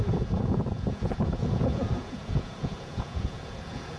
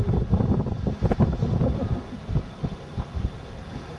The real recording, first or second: second